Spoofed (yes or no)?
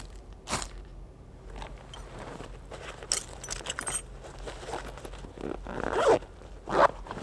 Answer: no